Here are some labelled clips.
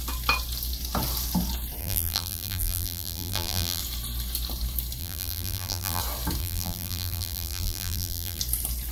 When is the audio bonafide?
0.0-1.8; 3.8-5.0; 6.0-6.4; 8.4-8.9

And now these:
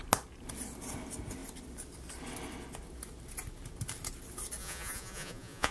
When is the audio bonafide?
0.0-4.6

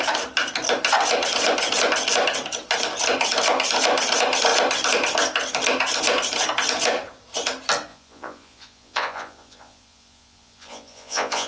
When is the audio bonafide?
0.0-7.9

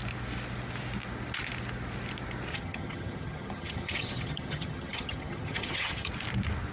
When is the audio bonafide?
0.0-2.5; 6.1-6.7

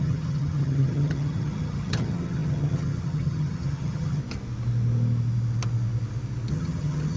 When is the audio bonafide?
4.2-6.5

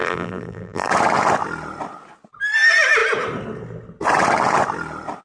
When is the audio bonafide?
0.9-5.2